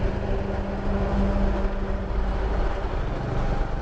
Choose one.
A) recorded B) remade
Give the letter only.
A